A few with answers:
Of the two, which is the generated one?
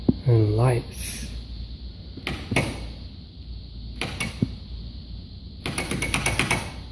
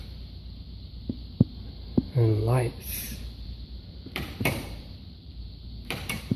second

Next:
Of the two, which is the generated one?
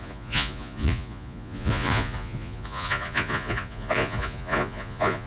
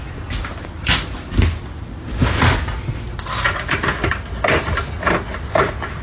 first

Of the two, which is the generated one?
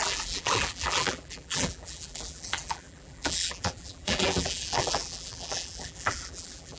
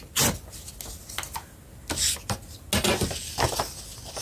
first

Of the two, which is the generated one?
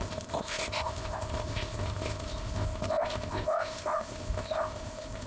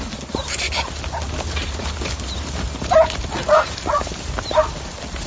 first